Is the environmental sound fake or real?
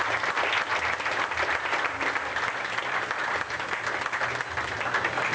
real